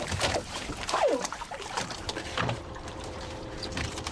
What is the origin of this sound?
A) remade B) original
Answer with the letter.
A